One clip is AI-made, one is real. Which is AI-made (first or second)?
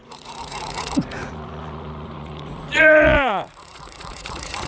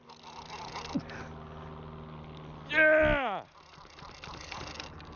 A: first